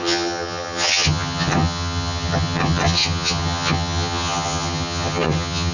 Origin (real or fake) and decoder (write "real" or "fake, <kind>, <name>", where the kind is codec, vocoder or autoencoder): fake, vocoder, HiFi-GAN